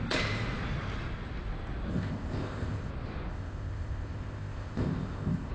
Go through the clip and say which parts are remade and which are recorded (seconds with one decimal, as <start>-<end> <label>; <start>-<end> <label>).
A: 0.0-1.9 recorded; 1.9-2.9 remade; 2.9-3.3 recorded; 3.3-5.5 remade